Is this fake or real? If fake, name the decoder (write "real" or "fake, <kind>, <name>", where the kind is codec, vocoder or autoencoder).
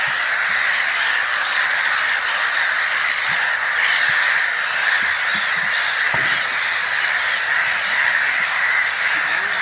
real